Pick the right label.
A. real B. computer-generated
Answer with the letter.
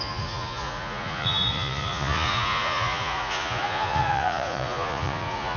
B